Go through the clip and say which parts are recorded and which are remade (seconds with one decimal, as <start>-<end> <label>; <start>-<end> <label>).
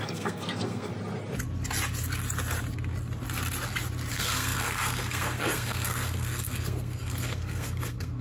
0.0-0.9 remade; 0.9-4.1 recorded; 4.1-8.2 remade